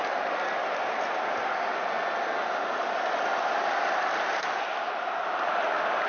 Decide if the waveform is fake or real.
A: real